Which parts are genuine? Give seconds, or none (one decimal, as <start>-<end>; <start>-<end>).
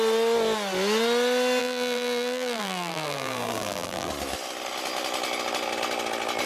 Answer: 0.0-1.6; 4.1-6.5